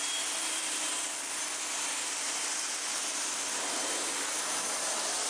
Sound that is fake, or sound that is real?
real